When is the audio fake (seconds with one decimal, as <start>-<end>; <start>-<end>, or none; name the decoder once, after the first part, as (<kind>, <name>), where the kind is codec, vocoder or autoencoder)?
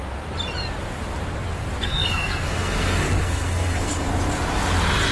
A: 1.8-4.1 (codec, SNAC)